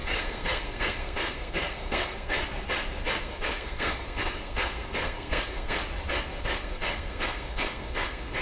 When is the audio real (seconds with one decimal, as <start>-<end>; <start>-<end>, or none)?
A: 2.4-3.2; 5.8-6.4